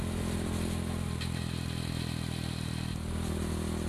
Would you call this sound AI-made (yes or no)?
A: no